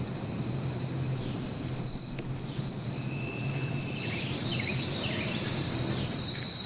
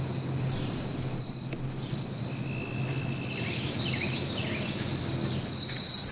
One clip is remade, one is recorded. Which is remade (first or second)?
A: first